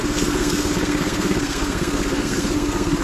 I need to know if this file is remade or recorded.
remade